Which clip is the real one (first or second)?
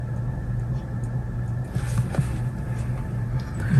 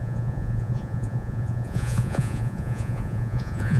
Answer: first